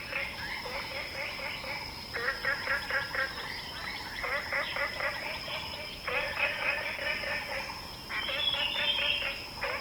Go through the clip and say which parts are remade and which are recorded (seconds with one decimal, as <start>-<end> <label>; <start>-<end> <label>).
0.0-2.4 recorded; 2.4-3.7 remade; 3.7-4.7 recorded; 4.7-5.6 remade; 5.6-9.8 recorded